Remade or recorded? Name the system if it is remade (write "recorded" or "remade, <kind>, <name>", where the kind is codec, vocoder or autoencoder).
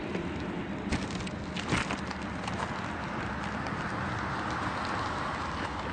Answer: recorded